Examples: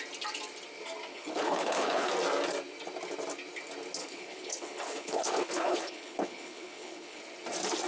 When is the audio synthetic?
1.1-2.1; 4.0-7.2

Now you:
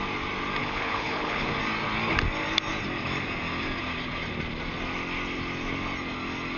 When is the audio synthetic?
0.6-1.5

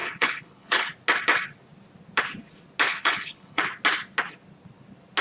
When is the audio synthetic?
0.0-0.9; 2.9-3.6

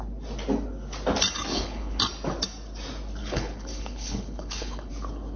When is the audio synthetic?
1.5-2.0; 3.2-4.9

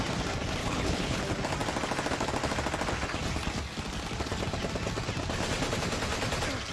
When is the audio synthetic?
0.6-1.2

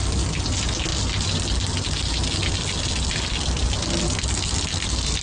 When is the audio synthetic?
none

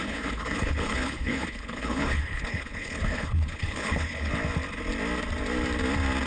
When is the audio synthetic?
0.0-4.3